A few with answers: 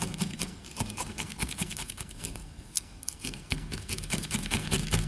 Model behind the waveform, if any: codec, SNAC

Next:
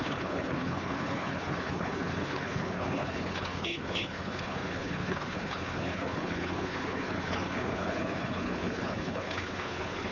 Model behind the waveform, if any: codec, HILCodec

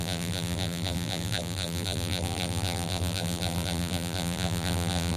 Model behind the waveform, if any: vocoder, BigVGAN v2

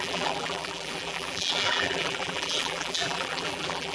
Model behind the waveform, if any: vocoder, BigVGAN v2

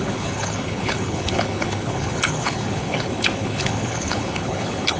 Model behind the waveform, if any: codec, HILCodec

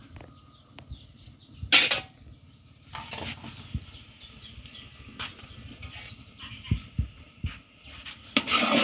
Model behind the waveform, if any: none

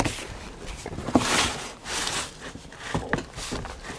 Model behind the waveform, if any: none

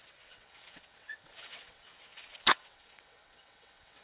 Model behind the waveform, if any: vocoder, WaveNeXt